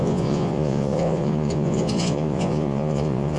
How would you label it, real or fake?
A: fake